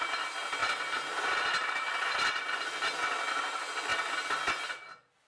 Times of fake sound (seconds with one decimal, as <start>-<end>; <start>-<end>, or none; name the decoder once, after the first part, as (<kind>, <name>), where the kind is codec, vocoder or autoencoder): 0.6-2.6 (vocoder, BigVGAN v2)